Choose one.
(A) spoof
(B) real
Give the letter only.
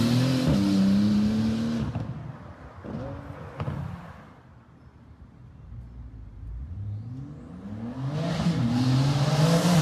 B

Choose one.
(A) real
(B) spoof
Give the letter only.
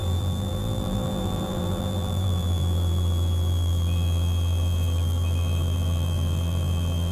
B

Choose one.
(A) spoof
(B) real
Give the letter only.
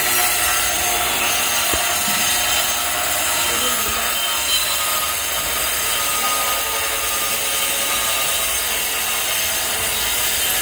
B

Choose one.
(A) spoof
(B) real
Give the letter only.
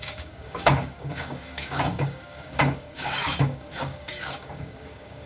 A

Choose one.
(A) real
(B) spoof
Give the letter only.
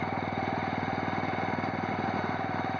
A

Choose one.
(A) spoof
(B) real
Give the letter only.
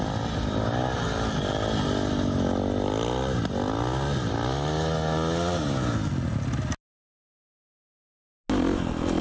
B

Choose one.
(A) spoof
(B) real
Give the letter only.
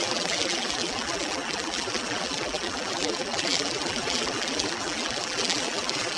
A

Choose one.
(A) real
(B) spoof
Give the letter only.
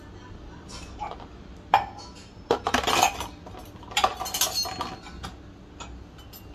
A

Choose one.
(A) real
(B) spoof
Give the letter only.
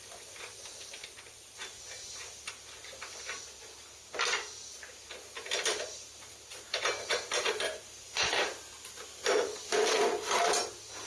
A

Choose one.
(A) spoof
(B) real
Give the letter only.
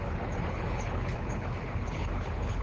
A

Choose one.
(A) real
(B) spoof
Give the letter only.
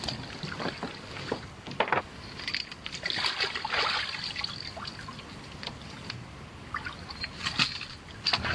A